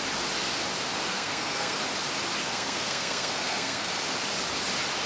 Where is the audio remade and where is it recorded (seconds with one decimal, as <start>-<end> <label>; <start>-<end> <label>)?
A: 0.0-1.1 recorded; 1.1-1.8 remade; 1.8-2.4 recorded; 2.4-3.9 remade; 3.9-5.1 recorded